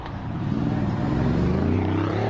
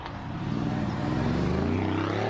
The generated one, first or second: first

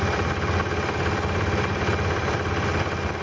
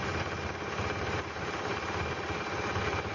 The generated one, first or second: second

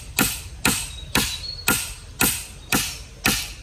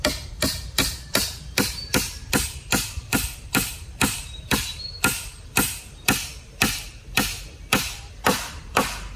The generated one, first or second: second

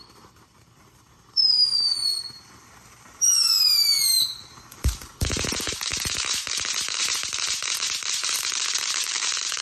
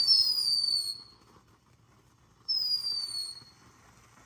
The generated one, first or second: first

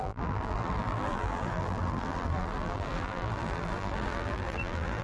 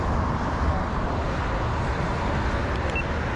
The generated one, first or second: first